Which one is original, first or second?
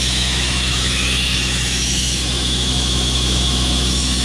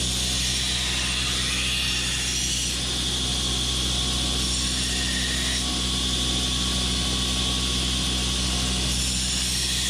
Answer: second